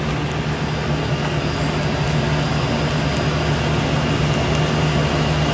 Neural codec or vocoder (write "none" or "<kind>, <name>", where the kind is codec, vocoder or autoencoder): none